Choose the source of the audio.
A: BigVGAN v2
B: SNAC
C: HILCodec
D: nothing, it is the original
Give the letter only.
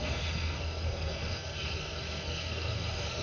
B